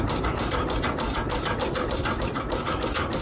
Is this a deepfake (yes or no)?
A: no